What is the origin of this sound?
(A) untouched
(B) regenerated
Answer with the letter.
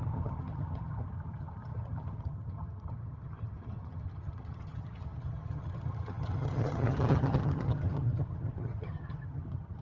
B